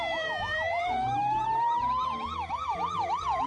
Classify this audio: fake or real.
fake